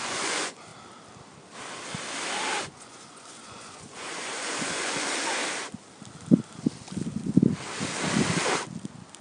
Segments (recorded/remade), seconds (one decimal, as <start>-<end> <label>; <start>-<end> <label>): 0.0-0.7 remade; 0.7-2.6 recorded; 2.6-5.4 remade; 5.4-9.2 recorded